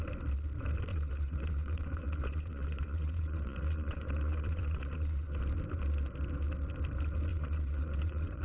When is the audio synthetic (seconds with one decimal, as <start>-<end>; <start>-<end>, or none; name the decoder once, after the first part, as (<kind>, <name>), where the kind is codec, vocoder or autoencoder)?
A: 0.9-5.4 (vocoder, WaveNeXt); 7.3-8.4